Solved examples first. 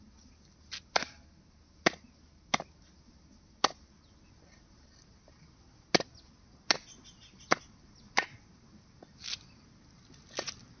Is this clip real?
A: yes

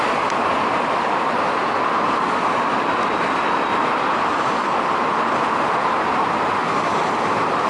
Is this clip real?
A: yes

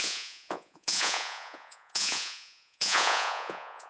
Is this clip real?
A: no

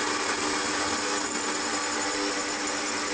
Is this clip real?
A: yes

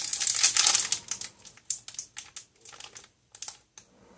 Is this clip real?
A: yes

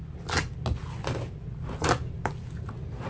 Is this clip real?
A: yes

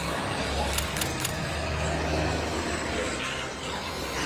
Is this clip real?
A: yes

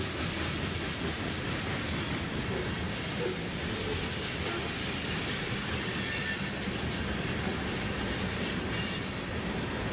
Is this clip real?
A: yes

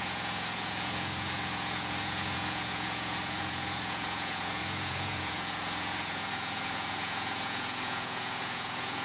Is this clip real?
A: no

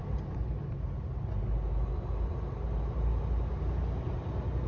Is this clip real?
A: yes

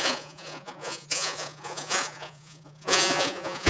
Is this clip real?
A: no